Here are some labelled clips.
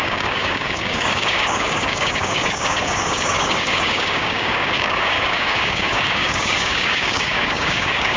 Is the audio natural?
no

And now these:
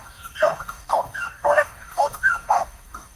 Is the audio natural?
no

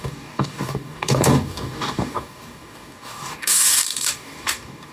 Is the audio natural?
no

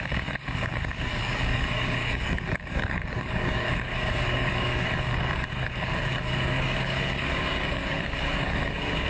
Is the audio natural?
no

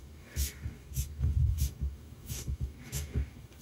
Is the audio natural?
no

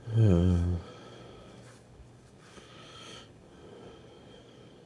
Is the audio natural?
no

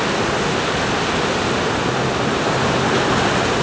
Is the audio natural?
yes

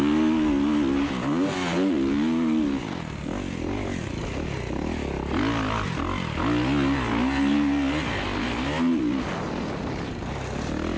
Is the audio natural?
yes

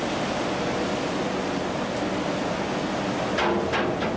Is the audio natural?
yes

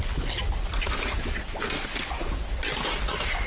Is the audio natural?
yes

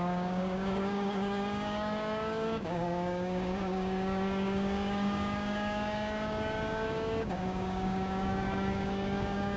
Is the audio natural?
no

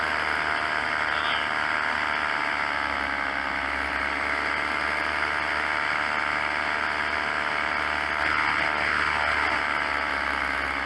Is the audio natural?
yes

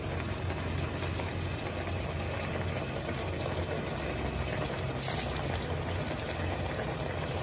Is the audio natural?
yes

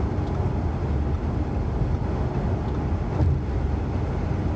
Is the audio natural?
yes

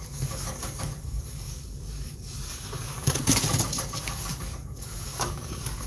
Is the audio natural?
no